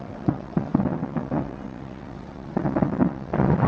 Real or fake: fake